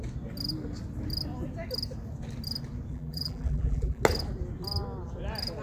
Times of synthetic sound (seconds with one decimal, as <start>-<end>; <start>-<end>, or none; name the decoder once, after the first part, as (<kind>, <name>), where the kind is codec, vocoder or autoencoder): 2.9-4.0 (vocoder, BigVGAN v2)